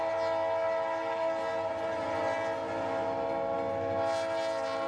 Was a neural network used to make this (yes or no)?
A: no